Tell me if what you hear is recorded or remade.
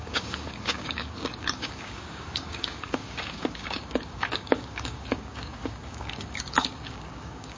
remade